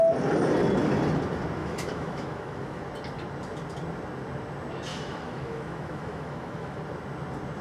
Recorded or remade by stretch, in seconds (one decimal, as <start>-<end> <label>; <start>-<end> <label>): 0.0-1.6 recorded; 1.6-2.8 remade; 2.8-4.9 recorded; 4.9-6.8 remade; 6.8-7.6 recorded